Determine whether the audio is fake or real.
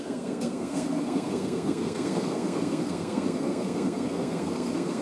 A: fake